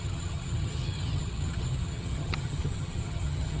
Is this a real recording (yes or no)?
no